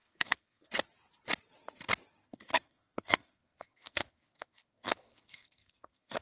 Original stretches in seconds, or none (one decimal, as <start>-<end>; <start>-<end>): 0.7-2.2